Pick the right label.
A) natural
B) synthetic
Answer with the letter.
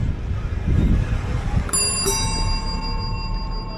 A